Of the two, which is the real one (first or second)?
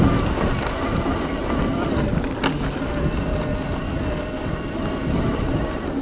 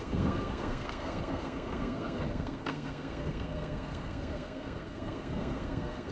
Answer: first